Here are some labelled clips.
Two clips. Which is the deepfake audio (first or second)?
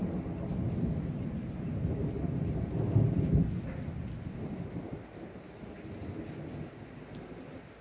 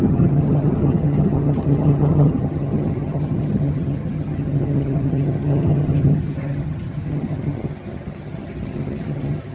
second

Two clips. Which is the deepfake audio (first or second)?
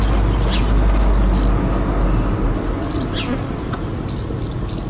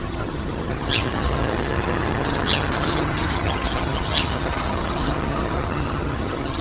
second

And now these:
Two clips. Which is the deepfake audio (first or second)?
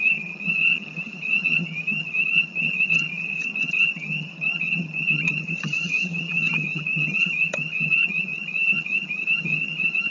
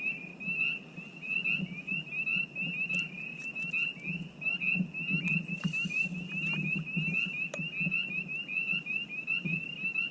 first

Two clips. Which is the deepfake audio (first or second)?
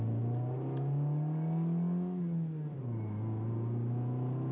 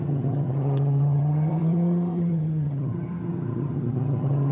second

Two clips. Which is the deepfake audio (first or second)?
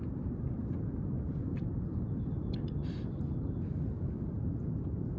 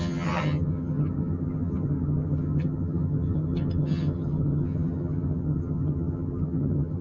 second